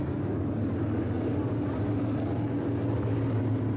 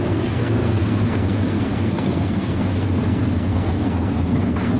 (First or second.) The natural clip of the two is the first